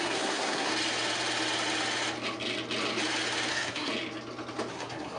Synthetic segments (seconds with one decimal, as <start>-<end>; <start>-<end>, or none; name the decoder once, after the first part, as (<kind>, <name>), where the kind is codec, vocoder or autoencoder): 0.0-0.7 (codec, SNAC); 3.5-3.9; 4.7-5.2